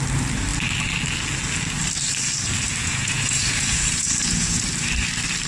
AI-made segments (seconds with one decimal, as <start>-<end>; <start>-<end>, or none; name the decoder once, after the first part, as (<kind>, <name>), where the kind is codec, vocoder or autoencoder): 2.8-4.6 (vocoder, Vocos)